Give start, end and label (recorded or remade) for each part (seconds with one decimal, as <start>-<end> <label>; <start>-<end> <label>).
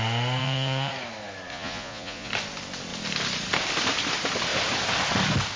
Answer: 0.0-0.4 recorded; 0.4-0.9 remade; 0.9-1.5 recorded; 1.5-2.3 remade; 2.3-5.6 recorded